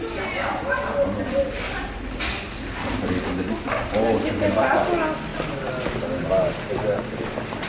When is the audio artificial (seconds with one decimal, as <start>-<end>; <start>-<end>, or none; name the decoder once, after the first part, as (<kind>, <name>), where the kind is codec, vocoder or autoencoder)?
none